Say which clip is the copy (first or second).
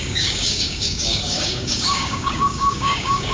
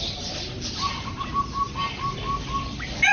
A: first